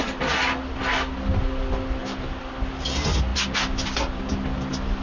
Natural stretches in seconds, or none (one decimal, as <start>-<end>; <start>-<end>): 0.0-5.0